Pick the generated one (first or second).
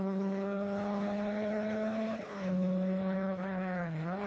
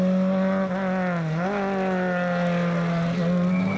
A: first